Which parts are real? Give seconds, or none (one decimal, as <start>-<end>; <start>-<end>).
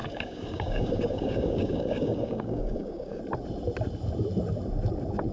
3.2-5.3